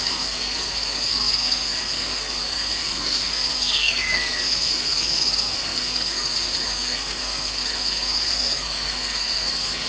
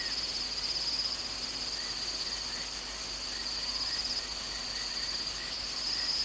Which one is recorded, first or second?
second